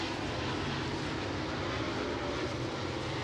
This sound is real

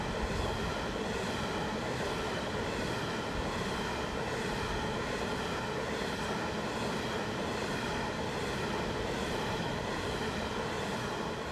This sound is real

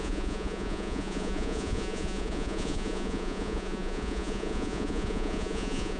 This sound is fake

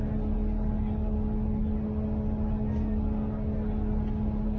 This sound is real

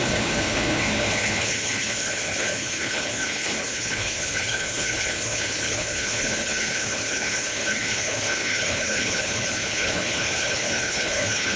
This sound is fake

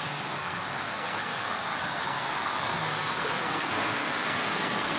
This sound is fake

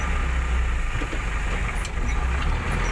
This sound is real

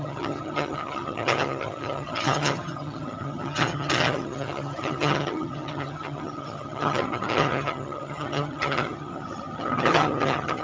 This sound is fake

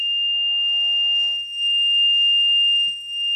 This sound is fake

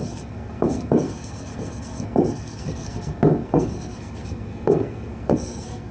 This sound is fake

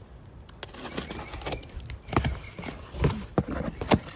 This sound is real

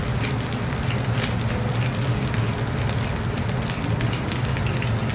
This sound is real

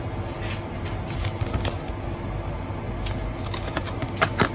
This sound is real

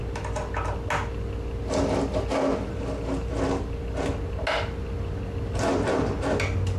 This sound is real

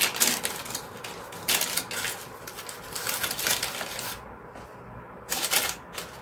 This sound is real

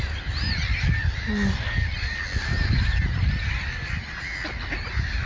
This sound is real